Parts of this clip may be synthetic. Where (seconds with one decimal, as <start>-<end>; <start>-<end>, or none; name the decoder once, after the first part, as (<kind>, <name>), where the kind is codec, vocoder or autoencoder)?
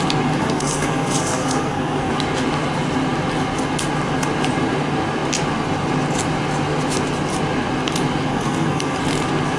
0.4-2.1 (codec, SNAC); 8.3-9.0